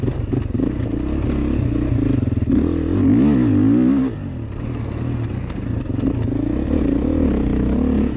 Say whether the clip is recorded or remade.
recorded